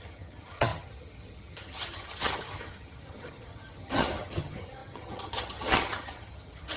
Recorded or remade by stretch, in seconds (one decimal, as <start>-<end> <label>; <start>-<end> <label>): 0.0-6.8 remade